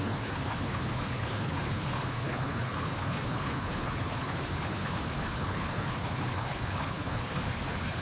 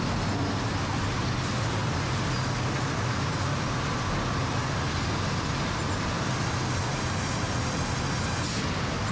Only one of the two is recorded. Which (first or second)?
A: second